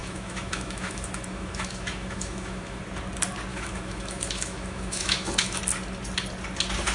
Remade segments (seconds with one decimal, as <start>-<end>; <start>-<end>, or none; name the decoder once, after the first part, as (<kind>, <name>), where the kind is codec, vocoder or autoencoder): 0.0-2.8 (autoencoder, DAC-VAE); 3.5-5.6